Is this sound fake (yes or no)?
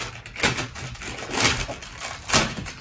no